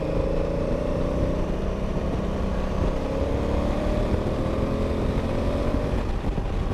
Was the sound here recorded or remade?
remade